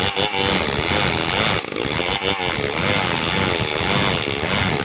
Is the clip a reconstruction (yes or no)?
no